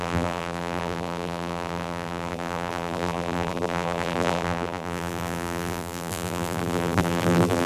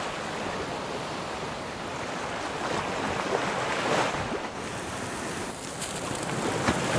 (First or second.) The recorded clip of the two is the second